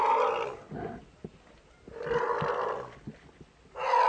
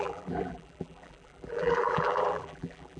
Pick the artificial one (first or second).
second